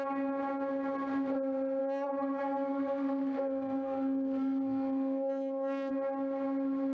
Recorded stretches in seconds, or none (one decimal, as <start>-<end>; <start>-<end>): 0.0-1.8; 5.9-6.9

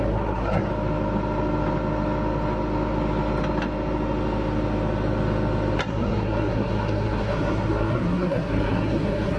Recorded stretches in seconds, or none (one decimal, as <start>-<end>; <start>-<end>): 0.7-5.8

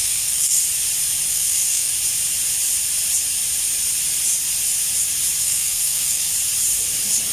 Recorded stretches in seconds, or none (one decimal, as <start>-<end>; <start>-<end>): 0.6-1.3; 1.9-5.4; 6.3-7.3

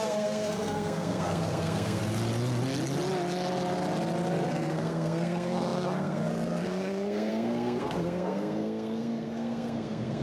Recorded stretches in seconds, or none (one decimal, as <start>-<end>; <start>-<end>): 2.0-4.5

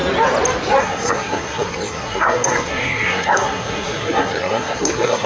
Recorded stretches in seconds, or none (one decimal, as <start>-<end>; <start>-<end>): 0.0-0.8